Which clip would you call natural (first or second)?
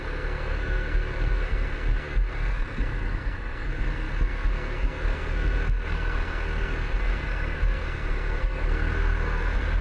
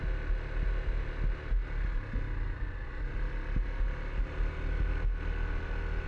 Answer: second